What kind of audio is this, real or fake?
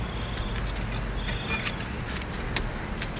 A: real